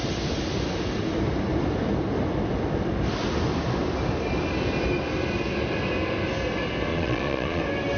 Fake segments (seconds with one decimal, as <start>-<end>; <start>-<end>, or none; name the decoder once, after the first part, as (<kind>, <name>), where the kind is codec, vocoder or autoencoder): 6.9-7.6 (vocoder, Vocos)